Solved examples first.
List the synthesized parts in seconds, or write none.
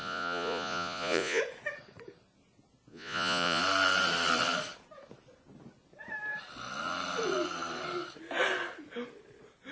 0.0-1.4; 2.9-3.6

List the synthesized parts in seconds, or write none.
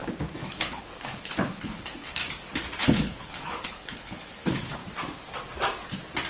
0.5-2.2; 2.9-4.8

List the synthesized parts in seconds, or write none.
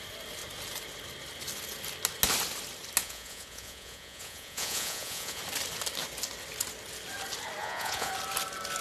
3.0-5.4; 7.6-8.1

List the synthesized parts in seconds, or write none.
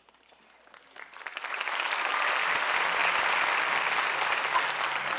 none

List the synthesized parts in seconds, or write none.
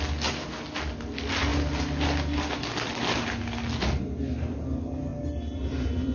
none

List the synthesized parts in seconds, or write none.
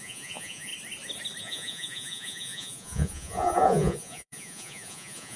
0.0-0.7; 1.4-5.4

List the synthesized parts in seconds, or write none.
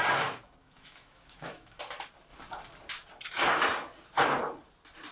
0.6-1.8